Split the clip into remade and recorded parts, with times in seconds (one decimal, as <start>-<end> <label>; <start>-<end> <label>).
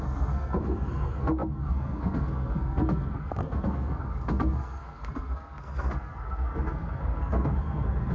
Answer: 0.0-8.1 remade